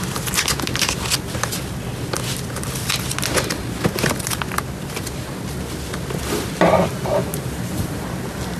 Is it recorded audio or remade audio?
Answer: recorded